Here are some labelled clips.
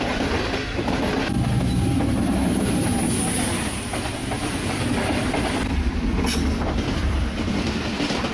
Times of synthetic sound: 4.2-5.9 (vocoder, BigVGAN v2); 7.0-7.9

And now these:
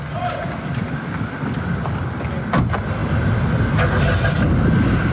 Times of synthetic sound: none

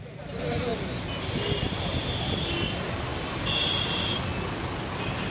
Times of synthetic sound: none

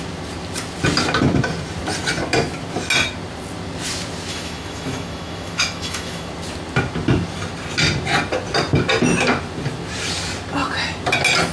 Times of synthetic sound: 4.3-6.3 (autoencoder, DAC-VAE)

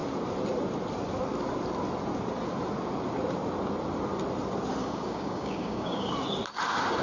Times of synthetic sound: 4.8-6.1 (codec, DAC)

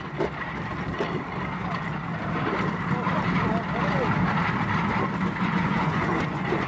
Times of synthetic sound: 5.5-6.7 (vocoder, Vocos)

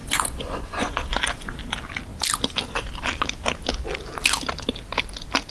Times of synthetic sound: 0.0-1.6 (vocoder, Vocos)

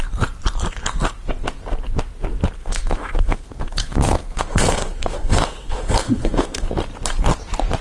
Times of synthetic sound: 2.6-6.7 (codec, SNAC)